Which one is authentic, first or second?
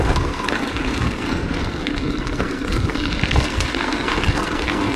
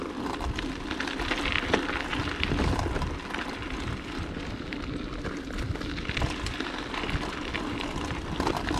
second